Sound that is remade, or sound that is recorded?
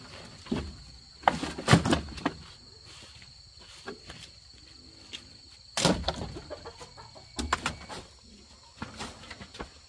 recorded